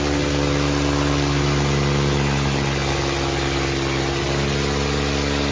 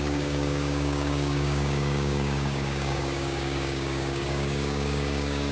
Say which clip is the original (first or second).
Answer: first